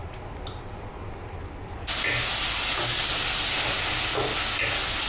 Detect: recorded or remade recorded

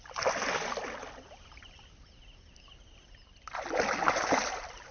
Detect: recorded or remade recorded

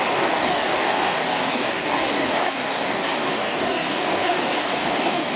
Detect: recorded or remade remade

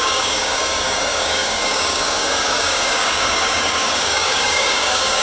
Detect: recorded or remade remade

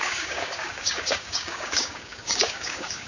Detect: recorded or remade remade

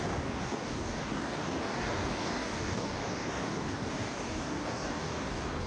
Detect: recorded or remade remade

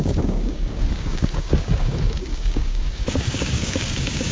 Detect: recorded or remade remade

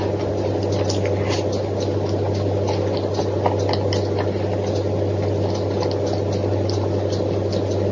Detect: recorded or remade recorded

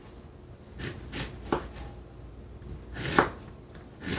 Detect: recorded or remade recorded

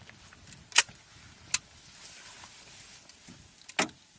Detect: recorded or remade recorded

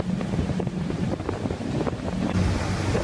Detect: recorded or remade recorded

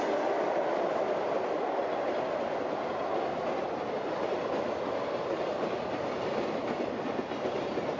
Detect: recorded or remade recorded